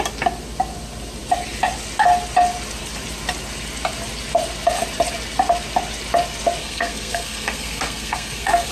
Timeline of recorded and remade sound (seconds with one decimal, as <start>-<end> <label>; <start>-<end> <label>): 0.0-6.6 recorded; 6.6-8.7 remade